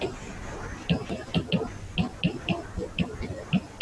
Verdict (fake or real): real